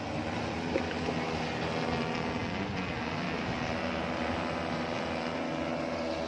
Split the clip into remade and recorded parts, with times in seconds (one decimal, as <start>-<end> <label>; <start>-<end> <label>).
0.0-6.3 recorded